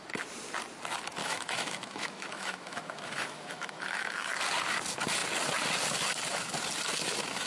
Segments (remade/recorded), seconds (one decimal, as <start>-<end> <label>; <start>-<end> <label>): 0.0-1.2 recorded; 1.2-4.3 remade; 4.3-7.5 recorded